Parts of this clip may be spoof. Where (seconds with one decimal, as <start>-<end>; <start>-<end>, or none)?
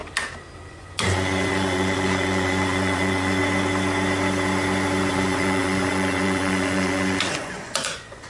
0.7-3.4; 5.1-8.3